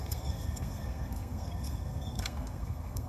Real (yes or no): no